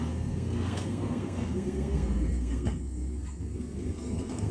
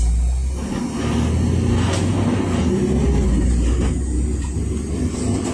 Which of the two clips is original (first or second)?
second